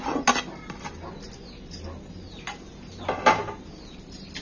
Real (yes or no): yes